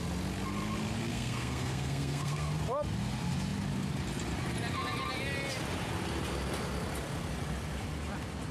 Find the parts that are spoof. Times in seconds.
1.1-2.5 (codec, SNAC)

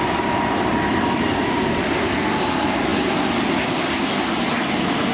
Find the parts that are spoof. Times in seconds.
none